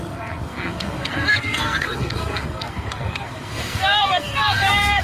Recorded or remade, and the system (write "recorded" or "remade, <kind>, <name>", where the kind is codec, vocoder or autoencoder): remade, codec, SNAC